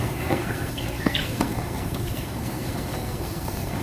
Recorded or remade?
remade